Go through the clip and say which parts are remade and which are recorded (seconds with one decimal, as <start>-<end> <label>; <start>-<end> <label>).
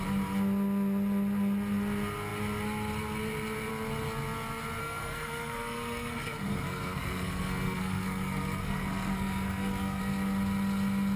0.0-4.8 recorded; 4.8-10.0 remade; 10.0-11.2 recorded